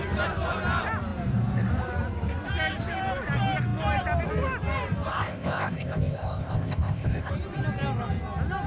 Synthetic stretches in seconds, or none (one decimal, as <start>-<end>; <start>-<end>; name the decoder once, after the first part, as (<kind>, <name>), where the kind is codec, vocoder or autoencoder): 5.1-7.3 (codec, ZipCodec)

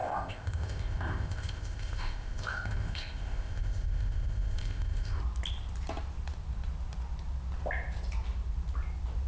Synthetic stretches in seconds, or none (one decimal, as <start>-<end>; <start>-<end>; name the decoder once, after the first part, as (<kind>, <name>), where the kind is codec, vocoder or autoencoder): 0.0-5.2 (codec, ZipCodec)

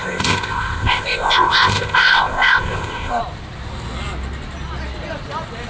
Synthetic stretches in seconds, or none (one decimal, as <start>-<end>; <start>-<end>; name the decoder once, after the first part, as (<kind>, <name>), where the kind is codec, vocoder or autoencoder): 0.0-3.2 (codec, ZipCodec)

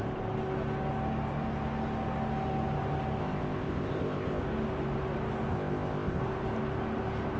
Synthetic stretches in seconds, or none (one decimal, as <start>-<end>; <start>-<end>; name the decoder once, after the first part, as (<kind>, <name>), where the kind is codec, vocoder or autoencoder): 3.2-4.4 (codec, ZipCodec); 5.5-6.2

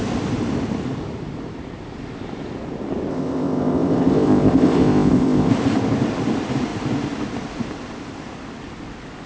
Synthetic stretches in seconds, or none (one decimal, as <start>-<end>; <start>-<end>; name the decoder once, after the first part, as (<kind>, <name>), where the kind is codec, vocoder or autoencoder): 3.1-5.5 (codec, ZipCodec)

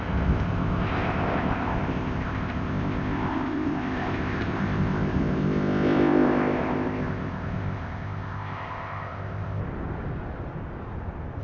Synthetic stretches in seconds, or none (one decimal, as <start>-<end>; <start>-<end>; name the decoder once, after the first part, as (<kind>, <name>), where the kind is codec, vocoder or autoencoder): 0.0-9.6 (codec, ZipCodec)

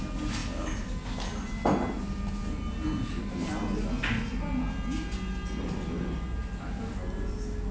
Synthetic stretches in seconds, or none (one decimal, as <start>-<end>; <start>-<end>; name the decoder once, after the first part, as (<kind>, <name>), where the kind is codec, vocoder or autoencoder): none

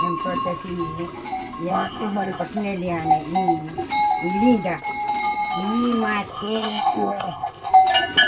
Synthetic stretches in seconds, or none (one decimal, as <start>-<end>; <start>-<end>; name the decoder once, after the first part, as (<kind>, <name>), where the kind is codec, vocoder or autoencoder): 1.7-2.4 (codec, ZipCodec); 6.3-7.7